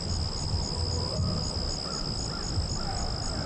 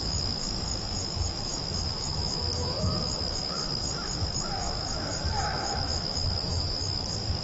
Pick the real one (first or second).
first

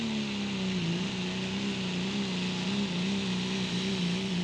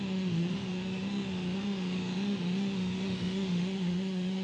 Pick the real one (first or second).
first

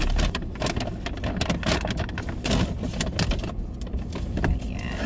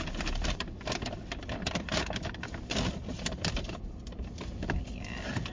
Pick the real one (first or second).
first